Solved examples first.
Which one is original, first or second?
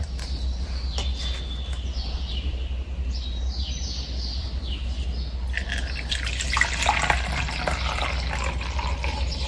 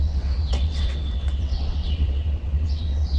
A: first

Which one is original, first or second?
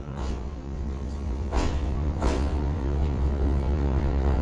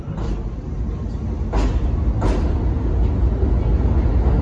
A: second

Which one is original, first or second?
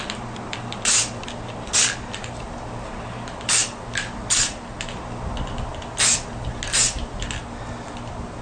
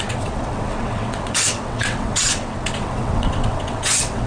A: first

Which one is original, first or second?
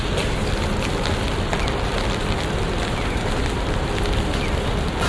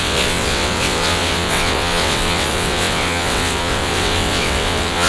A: first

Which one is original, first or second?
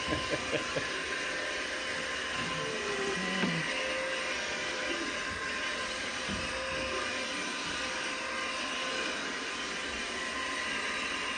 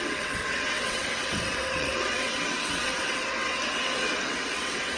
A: first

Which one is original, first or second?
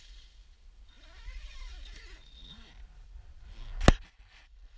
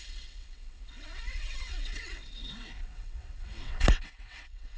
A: first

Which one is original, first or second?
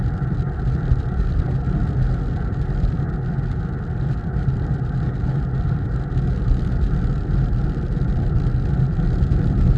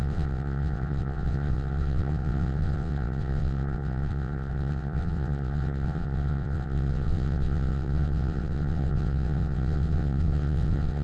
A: first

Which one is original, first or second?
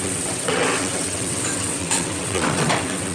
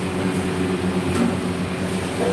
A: second